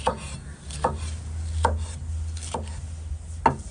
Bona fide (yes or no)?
yes